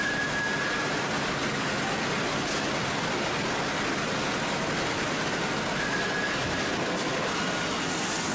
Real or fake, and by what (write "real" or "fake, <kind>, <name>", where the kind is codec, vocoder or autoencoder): real